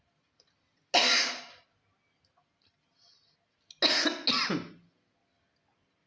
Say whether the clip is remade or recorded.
recorded